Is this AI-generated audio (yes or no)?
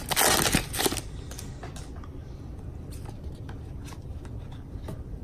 no